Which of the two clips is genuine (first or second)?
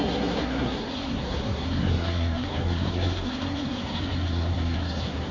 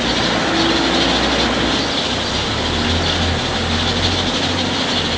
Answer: second